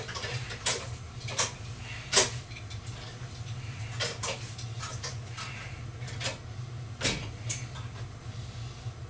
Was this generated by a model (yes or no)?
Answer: no